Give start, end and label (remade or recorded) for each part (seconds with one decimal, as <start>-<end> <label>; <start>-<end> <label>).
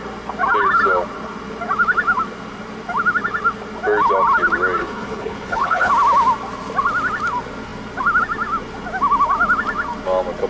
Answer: 0.0-4.8 recorded; 4.8-5.9 remade; 5.9-10.5 recorded